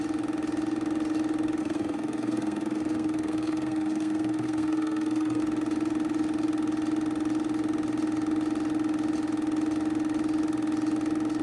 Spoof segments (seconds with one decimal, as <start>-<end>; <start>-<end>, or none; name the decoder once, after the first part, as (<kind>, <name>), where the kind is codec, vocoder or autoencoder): 1.6-5.4 (codec, SNAC)